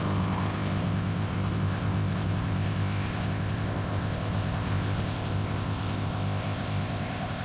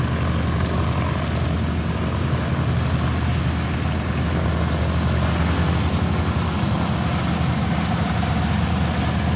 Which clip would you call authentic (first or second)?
second